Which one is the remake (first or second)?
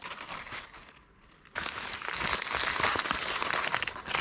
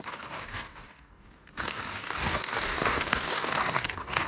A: second